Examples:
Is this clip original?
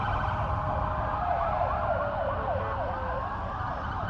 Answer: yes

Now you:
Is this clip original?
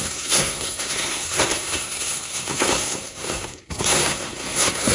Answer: no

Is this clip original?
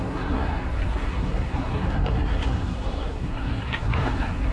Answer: no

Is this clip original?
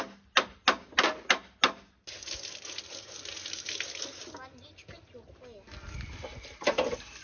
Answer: yes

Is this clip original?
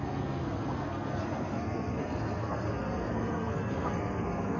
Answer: no